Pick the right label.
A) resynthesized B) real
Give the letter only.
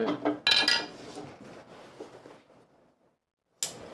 B